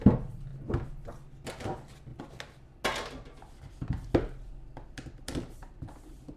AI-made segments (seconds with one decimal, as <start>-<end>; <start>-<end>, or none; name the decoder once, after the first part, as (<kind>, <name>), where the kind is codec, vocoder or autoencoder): 5.6-6.4 (vocoder, BigVGAN v2)